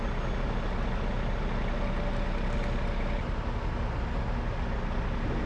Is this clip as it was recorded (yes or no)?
yes